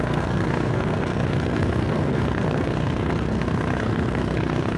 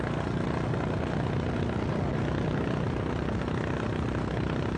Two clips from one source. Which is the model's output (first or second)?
first